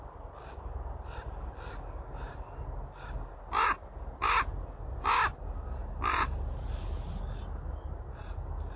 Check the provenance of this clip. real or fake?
real